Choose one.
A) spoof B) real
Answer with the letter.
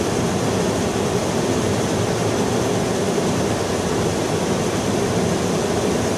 B